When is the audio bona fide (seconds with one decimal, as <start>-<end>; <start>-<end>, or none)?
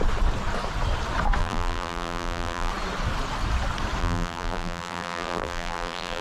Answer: 0.0-1.4; 2.7-4.0